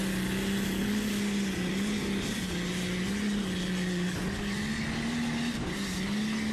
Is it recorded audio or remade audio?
recorded